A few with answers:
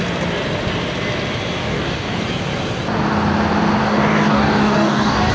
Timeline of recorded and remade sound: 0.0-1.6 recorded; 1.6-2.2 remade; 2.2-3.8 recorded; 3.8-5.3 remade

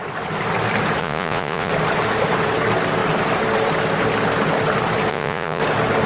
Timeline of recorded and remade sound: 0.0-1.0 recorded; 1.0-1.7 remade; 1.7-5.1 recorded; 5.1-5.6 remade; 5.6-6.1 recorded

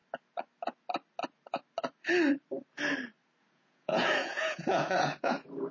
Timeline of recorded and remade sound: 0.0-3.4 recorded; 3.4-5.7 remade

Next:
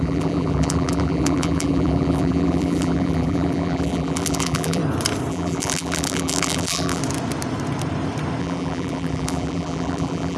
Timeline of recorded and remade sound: 0.0-4.8 remade; 4.8-5.3 recorded; 5.3-7.0 remade; 7.0-8.4 recorded; 8.4-10.4 remade